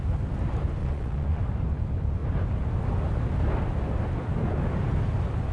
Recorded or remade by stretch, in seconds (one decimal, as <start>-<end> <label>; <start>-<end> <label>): 0.0-0.8 recorded; 0.8-1.4 remade; 1.4-5.5 recorded